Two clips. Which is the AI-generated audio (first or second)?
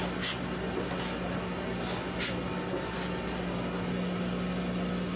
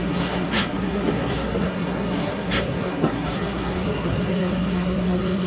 second